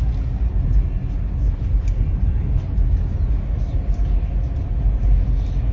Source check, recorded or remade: recorded